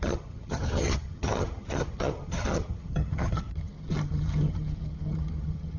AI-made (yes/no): yes